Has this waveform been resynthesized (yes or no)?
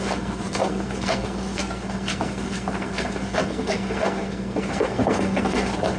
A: yes